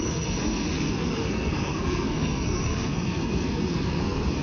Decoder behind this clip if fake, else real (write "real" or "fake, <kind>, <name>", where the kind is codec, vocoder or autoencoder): fake, codec, SNAC